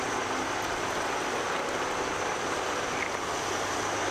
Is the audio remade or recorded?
recorded